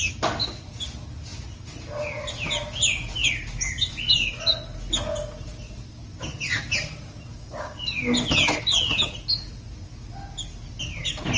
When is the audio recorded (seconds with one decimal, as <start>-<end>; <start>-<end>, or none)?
0.0-7.3; 8.0-11.4